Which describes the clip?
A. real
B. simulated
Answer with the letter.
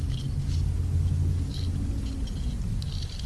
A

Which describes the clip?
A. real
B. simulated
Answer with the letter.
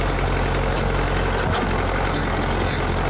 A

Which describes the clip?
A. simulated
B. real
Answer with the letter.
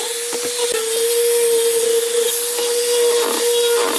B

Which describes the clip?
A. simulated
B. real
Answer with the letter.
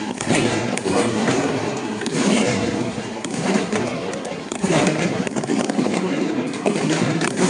A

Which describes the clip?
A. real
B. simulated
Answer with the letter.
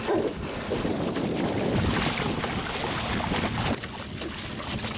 A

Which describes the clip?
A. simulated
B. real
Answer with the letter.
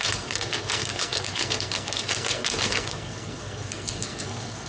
A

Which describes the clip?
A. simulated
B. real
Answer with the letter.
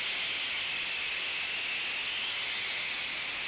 B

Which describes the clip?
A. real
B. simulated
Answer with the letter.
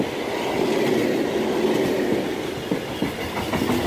A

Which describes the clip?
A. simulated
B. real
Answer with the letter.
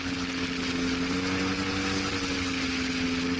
B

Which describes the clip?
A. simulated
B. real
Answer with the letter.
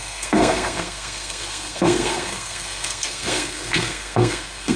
A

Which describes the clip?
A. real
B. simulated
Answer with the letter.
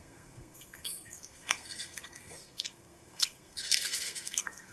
B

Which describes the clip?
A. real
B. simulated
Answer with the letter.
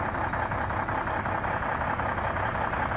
A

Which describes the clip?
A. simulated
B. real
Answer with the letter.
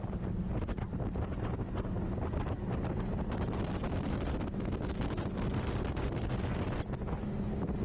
B